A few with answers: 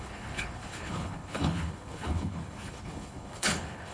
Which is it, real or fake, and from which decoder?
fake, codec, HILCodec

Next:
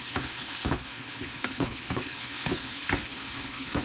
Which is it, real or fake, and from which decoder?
fake, codec, HILCodec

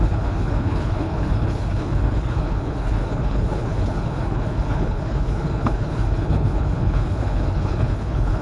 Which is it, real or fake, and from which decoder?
fake, codec, HILCodec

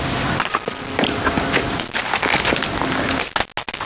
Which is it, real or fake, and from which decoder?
real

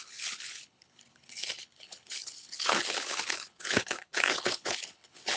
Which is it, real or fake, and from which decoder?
fake, codec, HILCodec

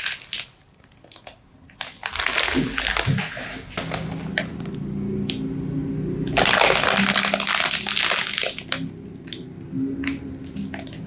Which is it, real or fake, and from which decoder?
real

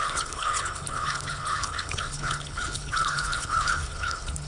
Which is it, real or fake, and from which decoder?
fake, codec, HILCodec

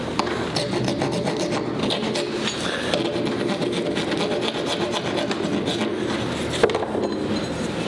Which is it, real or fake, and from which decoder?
real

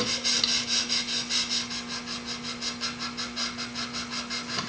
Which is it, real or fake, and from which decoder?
real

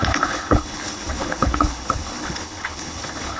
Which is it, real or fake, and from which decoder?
fake, codec, HILCodec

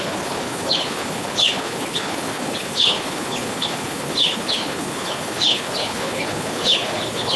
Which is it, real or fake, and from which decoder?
fake, codec, HILCodec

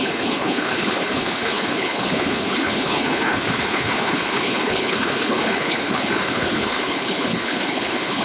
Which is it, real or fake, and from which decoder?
fake, codec, HILCodec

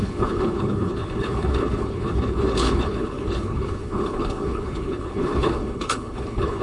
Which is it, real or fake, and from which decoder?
fake, codec, HILCodec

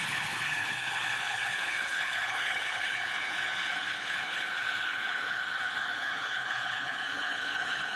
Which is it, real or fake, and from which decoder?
fake, codec, HILCodec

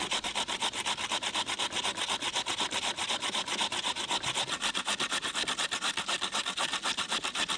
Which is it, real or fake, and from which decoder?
real